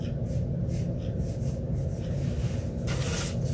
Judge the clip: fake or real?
real